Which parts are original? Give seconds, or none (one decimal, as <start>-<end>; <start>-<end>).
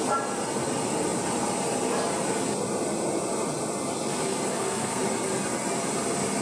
0.0-4.5; 5.0-6.4